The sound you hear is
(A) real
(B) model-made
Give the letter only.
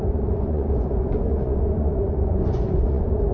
B